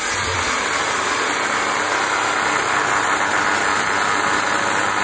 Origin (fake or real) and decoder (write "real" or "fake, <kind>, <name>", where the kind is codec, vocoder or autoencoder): real